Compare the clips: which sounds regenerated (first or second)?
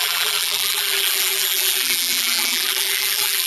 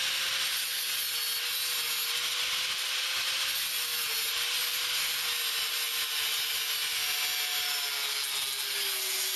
first